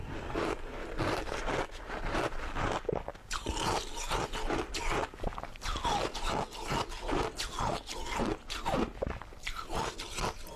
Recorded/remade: recorded